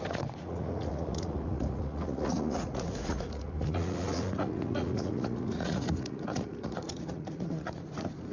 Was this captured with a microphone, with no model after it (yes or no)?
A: no